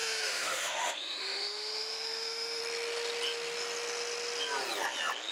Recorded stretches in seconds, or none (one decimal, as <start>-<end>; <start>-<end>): 2.6-5.3